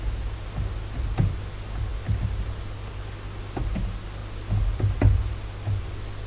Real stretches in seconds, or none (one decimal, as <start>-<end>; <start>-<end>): 0.0-6.3